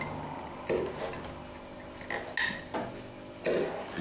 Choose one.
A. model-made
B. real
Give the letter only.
B